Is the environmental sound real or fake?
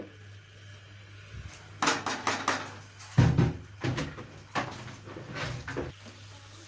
real